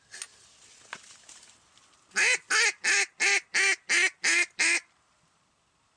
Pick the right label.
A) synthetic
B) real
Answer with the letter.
B